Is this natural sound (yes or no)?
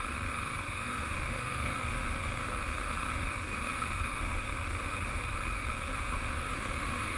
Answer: no